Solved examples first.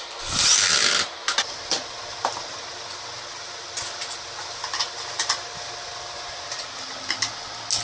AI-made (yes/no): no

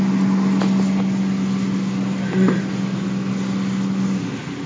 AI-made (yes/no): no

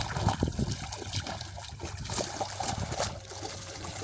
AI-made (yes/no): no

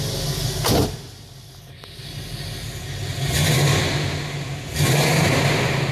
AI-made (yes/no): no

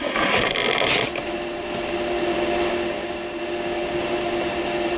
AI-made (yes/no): no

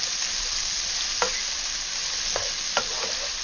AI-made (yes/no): no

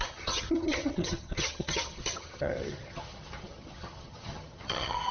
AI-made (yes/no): yes